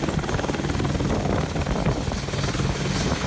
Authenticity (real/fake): real